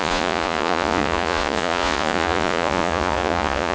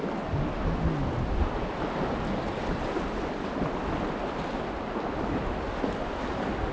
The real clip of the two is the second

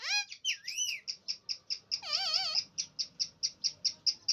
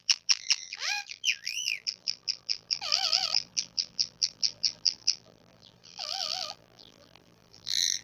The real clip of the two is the first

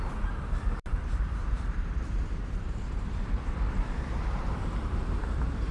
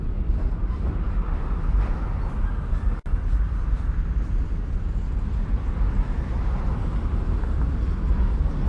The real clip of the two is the second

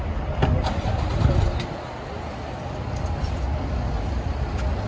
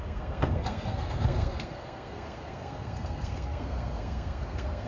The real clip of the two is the first